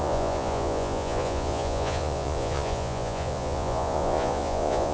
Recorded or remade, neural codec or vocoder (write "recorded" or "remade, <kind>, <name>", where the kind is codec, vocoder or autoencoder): remade, vocoder, Vocos